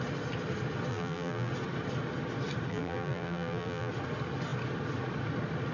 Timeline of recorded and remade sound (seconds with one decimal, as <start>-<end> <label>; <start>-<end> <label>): 0.0-0.9 recorded; 0.9-1.5 remade; 1.5-2.7 recorded; 2.7-3.9 remade; 3.9-5.7 recorded

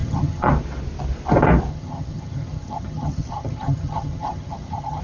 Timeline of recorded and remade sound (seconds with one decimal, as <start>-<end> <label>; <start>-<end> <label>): 0.0-0.5 remade; 0.5-1.7 recorded; 1.7-5.0 remade

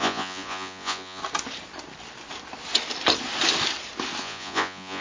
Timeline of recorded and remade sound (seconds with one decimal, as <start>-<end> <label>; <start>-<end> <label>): 0.0-1.2 remade; 1.2-4.2 recorded; 4.2-5.0 remade

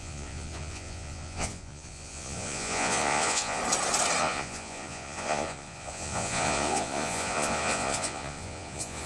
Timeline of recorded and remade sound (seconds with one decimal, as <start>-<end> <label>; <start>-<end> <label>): 0.0-3.6 remade; 3.6-4.2 recorded; 4.2-9.1 remade

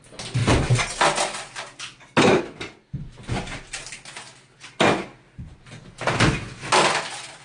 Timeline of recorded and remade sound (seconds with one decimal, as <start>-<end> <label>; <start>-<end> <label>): 0.0-7.4 recorded

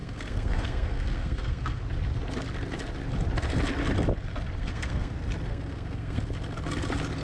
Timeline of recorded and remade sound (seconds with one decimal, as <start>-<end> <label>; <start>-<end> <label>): 0.0-1.8 remade; 1.8-4.6 recorded; 4.6-5.1 remade; 5.1-5.5 recorded; 5.5-6.2 remade; 6.2-7.2 recorded

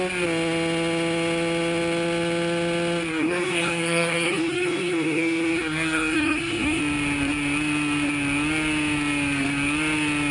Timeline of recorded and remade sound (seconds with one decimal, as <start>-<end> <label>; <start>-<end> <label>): 0.0-3.1 recorded; 3.1-6.8 remade; 6.8-10.3 recorded

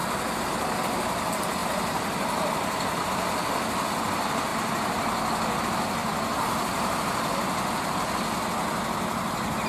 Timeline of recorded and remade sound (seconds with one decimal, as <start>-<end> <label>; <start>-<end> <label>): 0.0-0.7 remade; 0.7-6.0 recorded; 6.0-7.0 remade; 7.0-9.7 recorded